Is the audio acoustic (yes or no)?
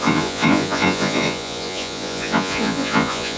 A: no